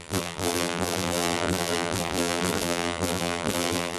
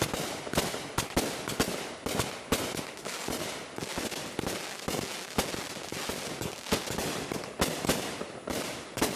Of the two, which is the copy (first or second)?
first